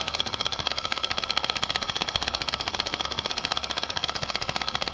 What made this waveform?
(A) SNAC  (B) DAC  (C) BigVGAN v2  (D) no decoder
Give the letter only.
A